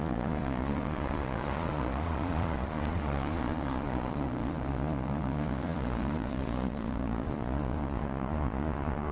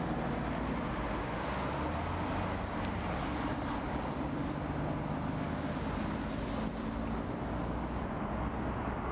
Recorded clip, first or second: second